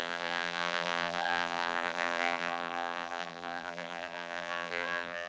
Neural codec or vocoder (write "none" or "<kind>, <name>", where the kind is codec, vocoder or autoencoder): vocoder, BigVGAN v2